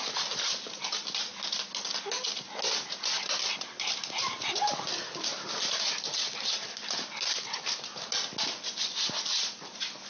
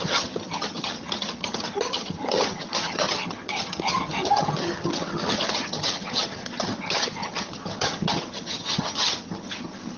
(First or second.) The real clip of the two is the first